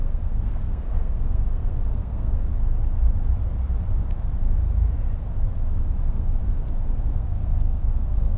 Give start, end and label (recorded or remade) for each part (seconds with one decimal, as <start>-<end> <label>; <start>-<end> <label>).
0.0-2.5 remade; 2.5-6.0 recorded; 6.0-6.4 remade; 6.4-7.0 recorded; 7.0-8.4 remade